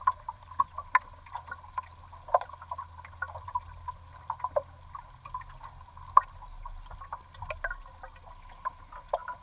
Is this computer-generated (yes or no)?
no